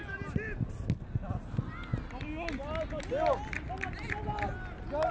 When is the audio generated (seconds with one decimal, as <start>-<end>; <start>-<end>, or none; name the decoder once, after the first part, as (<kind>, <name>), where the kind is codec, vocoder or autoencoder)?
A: none